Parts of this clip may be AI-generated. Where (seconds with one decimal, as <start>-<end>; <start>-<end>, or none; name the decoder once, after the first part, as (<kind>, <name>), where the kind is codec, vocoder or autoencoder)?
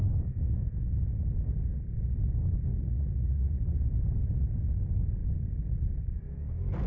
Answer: 2.7-3.6 (vocoder, Vocos)